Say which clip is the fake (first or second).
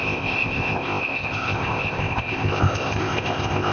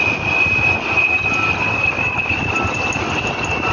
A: first